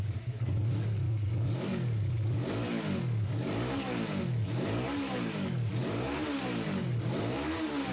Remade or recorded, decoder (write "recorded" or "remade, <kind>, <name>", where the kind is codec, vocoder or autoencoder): remade, codec, DAC